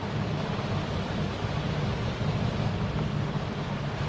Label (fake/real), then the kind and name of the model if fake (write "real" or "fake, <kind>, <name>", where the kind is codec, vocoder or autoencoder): real